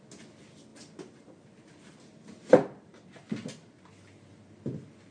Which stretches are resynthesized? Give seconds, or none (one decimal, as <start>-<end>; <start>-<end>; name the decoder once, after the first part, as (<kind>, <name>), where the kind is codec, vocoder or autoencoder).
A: none